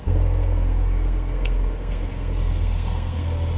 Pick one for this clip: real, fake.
fake